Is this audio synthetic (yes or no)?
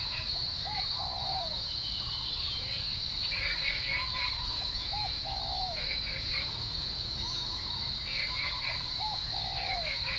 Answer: yes